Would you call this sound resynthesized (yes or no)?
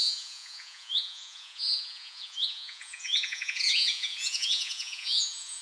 yes